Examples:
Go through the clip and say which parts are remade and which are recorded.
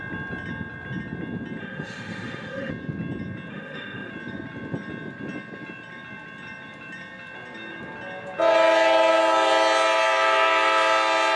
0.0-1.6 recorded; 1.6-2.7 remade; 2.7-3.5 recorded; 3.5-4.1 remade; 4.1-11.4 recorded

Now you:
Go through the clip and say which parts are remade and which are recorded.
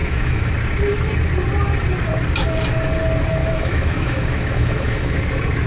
0.0-0.5 remade; 0.5-3.4 recorded; 3.4-5.2 remade; 5.2-5.7 recorded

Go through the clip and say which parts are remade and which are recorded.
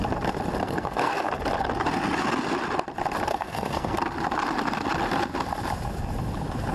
0.0-0.6 recorded; 0.6-1.3 remade; 1.3-3.3 recorded; 3.3-4.0 remade; 4.0-6.7 recorded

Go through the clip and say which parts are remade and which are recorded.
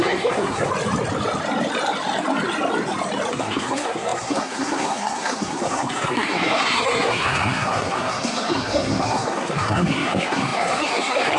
0.0-0.7 remade; 0.7-3.3 recorded; 3.3-11.4 remade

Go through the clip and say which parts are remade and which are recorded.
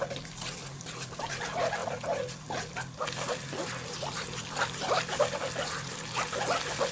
0.0-6.9 recorded